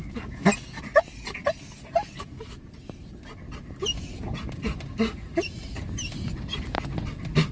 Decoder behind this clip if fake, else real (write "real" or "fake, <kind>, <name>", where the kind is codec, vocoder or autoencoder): real